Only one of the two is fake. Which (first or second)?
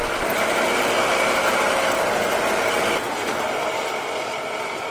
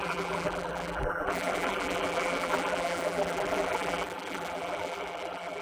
second